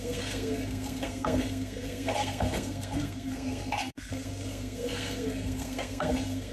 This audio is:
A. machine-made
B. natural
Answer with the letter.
A